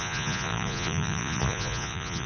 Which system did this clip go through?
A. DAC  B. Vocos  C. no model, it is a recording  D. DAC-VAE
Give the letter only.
B